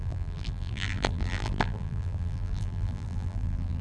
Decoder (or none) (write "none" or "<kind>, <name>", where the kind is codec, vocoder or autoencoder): vocoder, BigVGAN v2